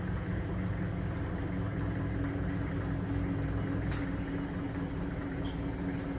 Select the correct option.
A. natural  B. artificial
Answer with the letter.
A